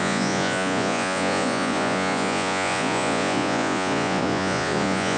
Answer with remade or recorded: remade